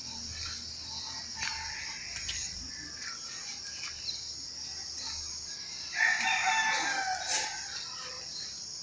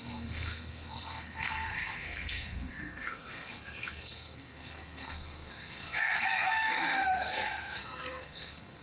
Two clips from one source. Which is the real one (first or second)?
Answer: first